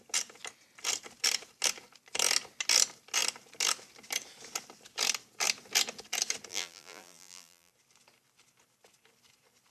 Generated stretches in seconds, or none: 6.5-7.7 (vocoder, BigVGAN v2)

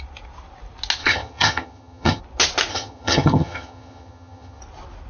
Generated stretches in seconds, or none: 1.0-2.2 (vocoder, HiFi-GAN); 2.7-4.6

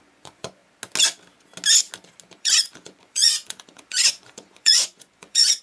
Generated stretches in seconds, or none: 0.0-0.6 (vocoder, Vocos); 2.4-5.6

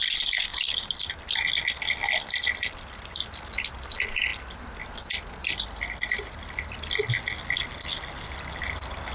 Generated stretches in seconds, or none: none

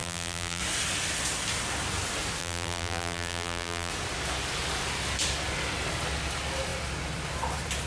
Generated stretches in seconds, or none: 0.0-0.6 (vocoder, BigVGAN v2); 2.4-3.9

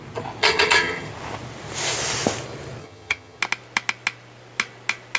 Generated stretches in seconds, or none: 0.4-1.1 (vocoder, HiFi-GAN); 2.8-3.4

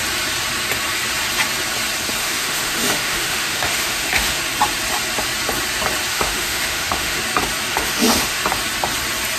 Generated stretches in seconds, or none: 2.2-4.4 (autoencoder, DAC-VAE); 6.1-7.2; 7.7-8.4

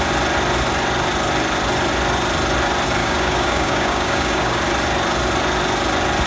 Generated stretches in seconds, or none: 3.0-4.6 (codec, DAC)